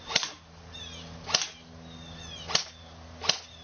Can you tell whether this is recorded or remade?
recorded